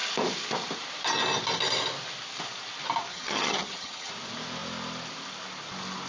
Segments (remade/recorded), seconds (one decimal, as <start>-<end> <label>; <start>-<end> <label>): 0.0-3.1 recorded; 3.1-4.1 remade; 4.1-6.1 recorded